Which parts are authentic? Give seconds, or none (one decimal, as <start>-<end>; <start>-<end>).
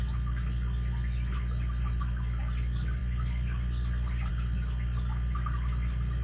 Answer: 0.0-6.2